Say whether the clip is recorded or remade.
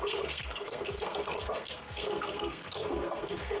remade